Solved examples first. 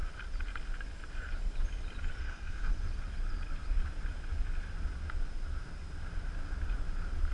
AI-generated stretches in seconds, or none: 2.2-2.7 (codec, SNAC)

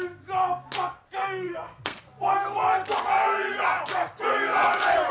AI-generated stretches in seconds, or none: 1.2-2.0 (codec, SNAC)

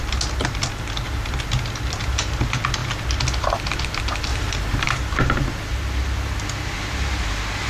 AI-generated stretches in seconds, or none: 4.3-4.9 (vocoder, BigVGAN v2)

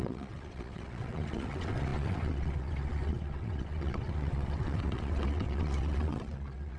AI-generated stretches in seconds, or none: 0.0-6.8 (vocoder, WaveNeXt)